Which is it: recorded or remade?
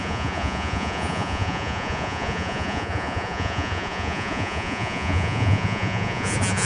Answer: remade